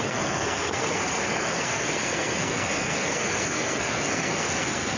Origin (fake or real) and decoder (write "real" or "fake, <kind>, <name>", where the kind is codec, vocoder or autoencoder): fake, codec, SNAC